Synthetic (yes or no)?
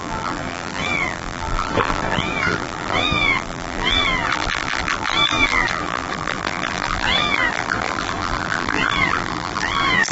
yes